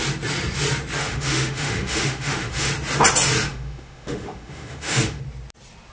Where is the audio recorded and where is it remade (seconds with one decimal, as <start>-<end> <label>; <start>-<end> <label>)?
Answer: 0.0-1.0 recorded; 1.0-2.7 remade; 2.7-3.5 recorded; 3.5-5.2 remade; 5.2-5.9 recorded